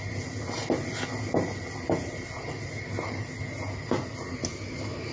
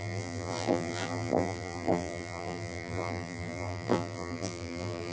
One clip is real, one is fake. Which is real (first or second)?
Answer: first